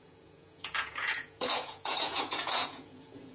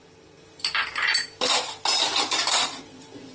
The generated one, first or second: first